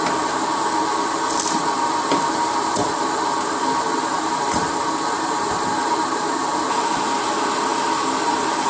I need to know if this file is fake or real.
real